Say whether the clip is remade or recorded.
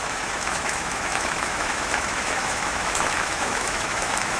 remade